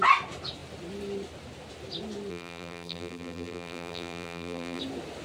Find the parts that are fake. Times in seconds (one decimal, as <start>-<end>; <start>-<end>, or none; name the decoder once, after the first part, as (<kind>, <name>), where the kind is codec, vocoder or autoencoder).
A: 2.3-4.8 (vocoder, BigVGAN v2)